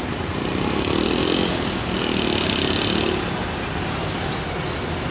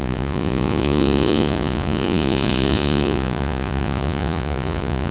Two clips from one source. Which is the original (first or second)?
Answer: first